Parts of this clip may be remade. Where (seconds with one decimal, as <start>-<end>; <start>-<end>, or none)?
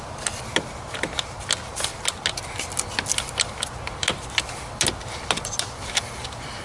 none